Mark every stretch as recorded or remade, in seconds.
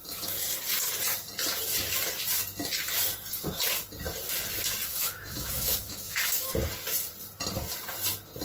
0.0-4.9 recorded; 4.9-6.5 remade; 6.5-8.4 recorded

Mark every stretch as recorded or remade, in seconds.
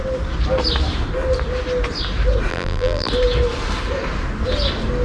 0.0-2.5 recorded; 2.5-3.1 remade; 3.1-5.0 recorded